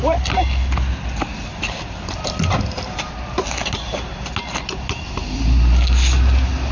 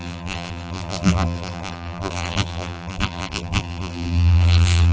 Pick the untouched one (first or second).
first